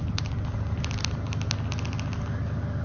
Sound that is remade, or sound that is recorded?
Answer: recorded